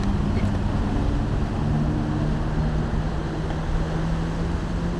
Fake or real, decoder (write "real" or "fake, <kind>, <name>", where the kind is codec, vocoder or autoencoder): real